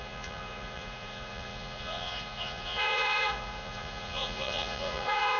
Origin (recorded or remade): remade